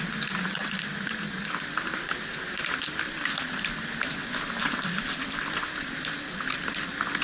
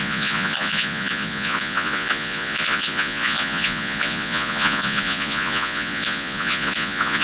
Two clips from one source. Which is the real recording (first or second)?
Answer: first